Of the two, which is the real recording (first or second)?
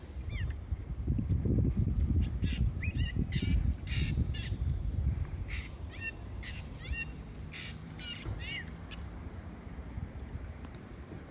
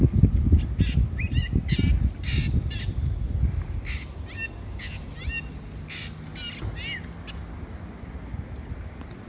second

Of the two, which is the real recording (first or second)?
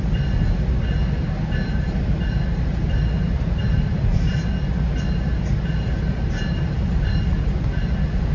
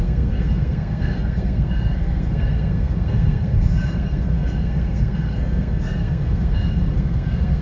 first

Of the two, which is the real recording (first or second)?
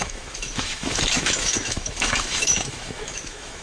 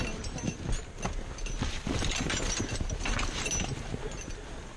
second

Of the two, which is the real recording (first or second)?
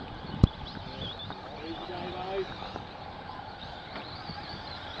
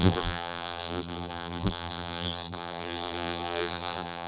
first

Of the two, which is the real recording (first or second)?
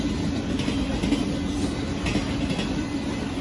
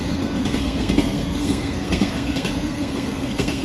first